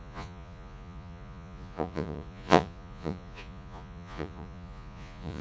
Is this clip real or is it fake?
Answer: fake